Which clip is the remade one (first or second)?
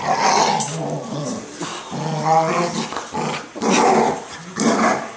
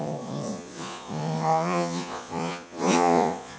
second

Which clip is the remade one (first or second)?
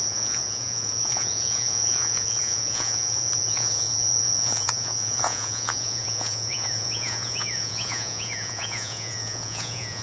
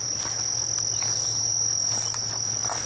first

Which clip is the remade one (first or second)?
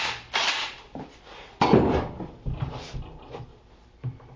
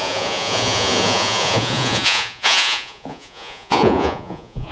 second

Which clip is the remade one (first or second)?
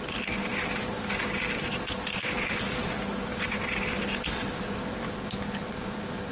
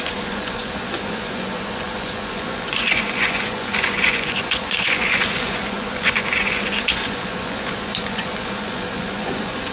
second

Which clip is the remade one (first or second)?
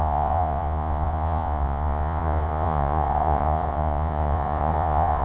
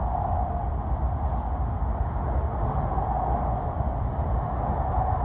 first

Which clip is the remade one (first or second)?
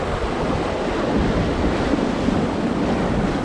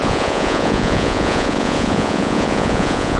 second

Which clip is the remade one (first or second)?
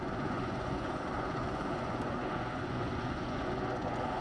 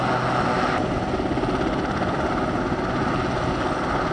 first